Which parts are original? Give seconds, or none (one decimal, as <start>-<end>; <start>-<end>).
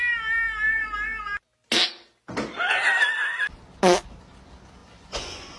0.0-4.8